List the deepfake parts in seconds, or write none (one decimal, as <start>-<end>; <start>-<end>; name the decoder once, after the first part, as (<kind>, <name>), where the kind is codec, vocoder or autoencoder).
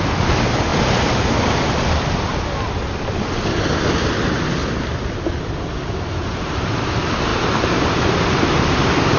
none